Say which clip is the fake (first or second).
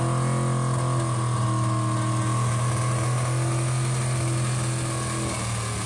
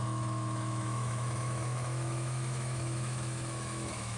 second